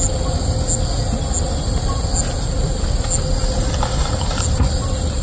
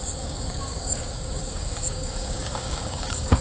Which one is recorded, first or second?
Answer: first